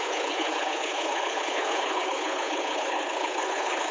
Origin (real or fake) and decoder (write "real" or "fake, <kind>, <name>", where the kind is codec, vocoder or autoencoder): fake, codec, HILCodec